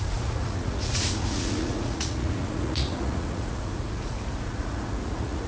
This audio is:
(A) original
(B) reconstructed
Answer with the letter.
B